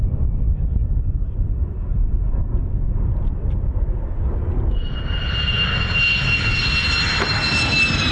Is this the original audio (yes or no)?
yes